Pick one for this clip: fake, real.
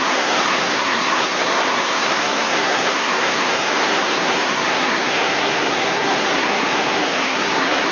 fake